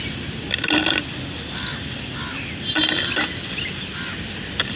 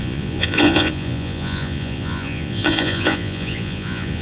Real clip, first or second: first